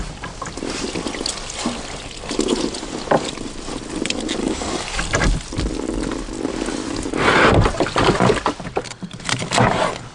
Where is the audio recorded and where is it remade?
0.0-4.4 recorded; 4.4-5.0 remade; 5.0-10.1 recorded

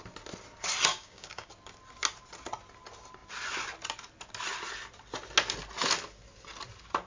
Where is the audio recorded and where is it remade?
0.0-0.9 recorded; 0.9-1.5 remade; 1.5-7.1 recorded

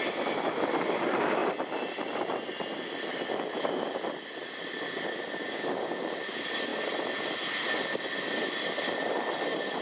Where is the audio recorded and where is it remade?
0.0-9.8 recorded

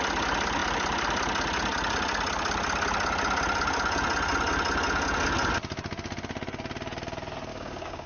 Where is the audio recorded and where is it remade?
0.0-7.5 recorded; 7.5-8.1 remade

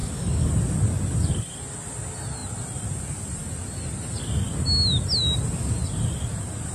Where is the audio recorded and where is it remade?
0.0-0.5 remade; 0.5-6.7 recorded

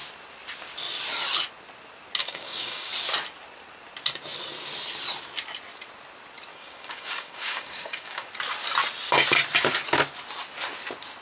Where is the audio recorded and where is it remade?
0.0-2.2 recorded; 2.2-2.9 remade; 2.9-6.5 recorded; 6.5-8.3 remade; 8.3-11.2 recorded

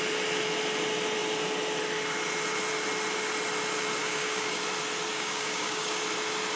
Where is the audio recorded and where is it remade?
0.0-4.0 recorded; 4.0-4.6 remade; 4.6-5.1 recorded; 5.1-5.9 remade; 5.9-6.6 recorded